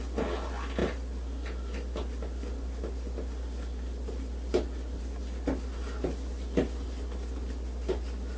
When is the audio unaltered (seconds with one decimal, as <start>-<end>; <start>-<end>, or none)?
0.0-8.4